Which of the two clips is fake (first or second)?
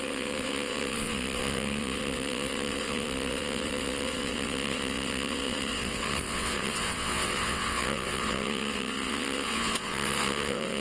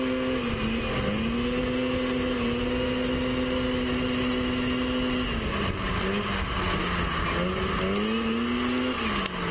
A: first